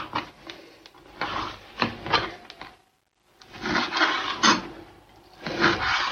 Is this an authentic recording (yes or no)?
yes